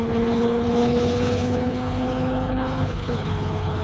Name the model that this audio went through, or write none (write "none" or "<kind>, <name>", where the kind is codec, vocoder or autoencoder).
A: codec, HILCodec